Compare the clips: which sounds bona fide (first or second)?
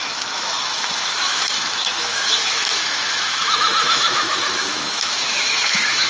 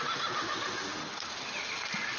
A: second